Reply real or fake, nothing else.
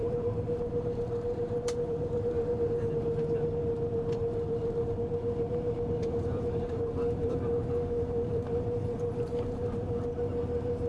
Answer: fake